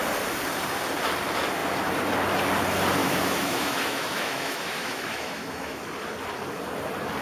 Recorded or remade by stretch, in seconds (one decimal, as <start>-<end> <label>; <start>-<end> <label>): 0.0-3.0 recorded; 3.0-5.8 remade; 5.8-7.2 recorded